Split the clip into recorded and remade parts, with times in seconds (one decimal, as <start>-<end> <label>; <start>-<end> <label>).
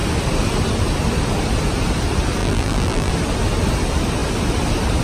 0.0-2.4 recorded; 2.4-3.1 remade; 3.1-5.0 recorded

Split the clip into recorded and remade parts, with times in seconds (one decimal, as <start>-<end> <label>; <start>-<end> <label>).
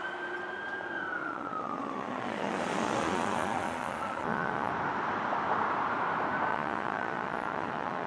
0.0-1.2 recorded; 1.2-4.7 remade; 4.7-6.5 recorded; 6.5-8.1 remade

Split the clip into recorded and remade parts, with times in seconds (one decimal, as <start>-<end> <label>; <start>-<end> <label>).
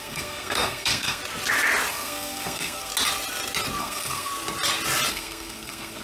0.0-1.2 remade; 1.2-1.9 recorded; 1.9-2.9 remade; 2.9-3.8 recorded; 3.8-4.3 remade; 4.3-5.1 recorded; 5.1-6.0 remade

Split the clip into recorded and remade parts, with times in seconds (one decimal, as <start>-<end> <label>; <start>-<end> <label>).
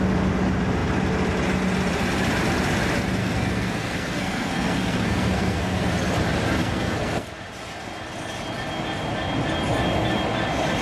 0.0-3.2 recorded; 3.2-5.9 remade; 5.9-6.6 recorded; 6.6-7.4 remade; 7.4-10.8 recorded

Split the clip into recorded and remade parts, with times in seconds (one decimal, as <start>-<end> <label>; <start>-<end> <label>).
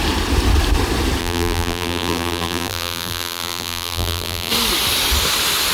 0.0-1.2 recorded; 1.2-4.5 remade; 4.5-5.7 recorded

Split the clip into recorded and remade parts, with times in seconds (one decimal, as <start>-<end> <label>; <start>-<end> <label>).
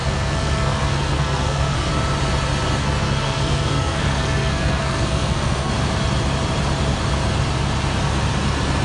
0.0-1.9 remade; 1.9-2.8 recorded; 2.8-5.7 remade; 5.7-8.8 recorded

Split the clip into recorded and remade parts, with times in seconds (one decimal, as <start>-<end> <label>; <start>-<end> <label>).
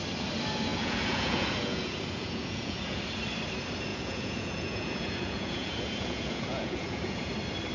0.0-0.7 recorded; 0.7-3.0 remade; 3.0-3.9 recorded; 3.9-7.3 remade; 7.3-7.7 recorded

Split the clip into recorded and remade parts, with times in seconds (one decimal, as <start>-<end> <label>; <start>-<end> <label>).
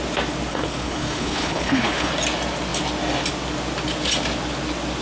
0.0-0.5 recorded; 0.5-2.1 remade; 2.1-5.0 recorded